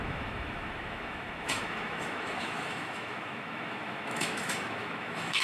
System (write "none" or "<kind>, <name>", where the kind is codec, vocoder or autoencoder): autoencoder, DAC-VAE